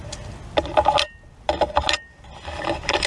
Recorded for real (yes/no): yes